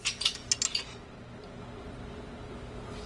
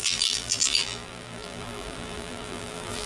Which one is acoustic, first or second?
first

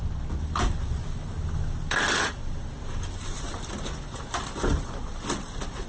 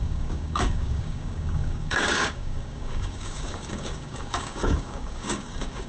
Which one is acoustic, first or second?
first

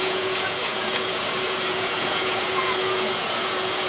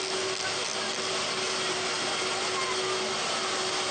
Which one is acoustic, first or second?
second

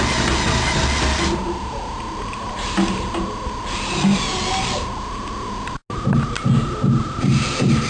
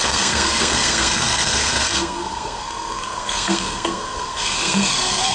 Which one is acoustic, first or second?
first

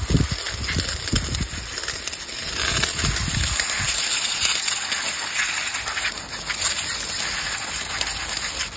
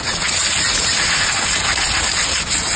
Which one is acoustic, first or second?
first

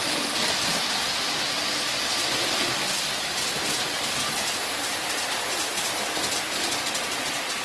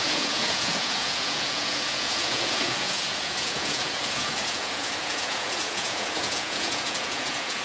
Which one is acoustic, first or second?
first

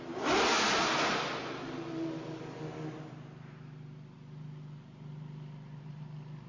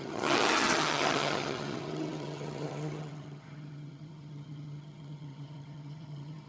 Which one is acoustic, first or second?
first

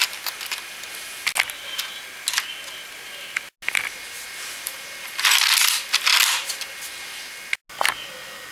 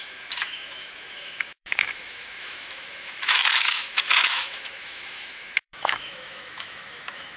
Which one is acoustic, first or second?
first